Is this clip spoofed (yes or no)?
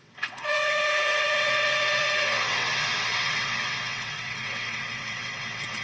yes